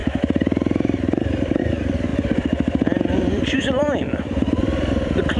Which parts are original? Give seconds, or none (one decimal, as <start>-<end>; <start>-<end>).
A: 1.6-2.1